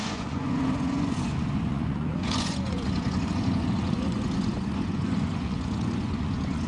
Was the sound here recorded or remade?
remade